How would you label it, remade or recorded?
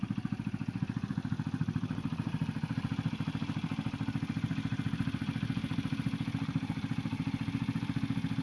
recorded